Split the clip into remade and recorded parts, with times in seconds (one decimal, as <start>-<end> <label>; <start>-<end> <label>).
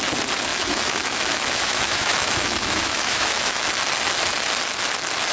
0.0-0.5 recorded; 0.5-3.7 remade; 3.7-5.3 recorded